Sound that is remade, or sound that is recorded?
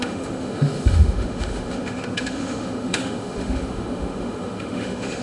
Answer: remade